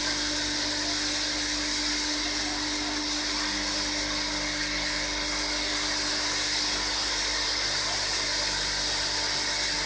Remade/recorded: recorded